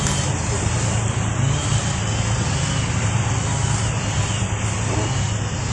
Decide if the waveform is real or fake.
real